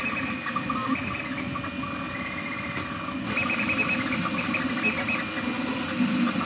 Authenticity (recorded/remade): recorded